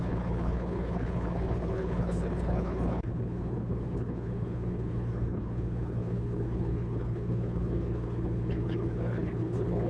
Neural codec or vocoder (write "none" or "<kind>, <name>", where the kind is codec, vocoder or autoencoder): codec, HILCodec